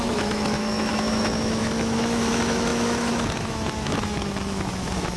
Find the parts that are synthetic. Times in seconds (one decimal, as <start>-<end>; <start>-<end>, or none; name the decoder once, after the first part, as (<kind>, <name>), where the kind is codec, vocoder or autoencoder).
0.0-5.2 (autoencoder, DAC-VAE)